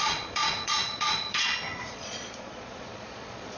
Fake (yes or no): yes